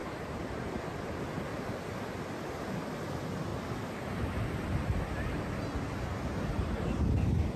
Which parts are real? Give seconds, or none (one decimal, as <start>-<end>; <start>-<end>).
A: 0.0-7.6